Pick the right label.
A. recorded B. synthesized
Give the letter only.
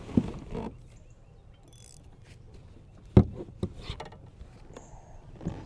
A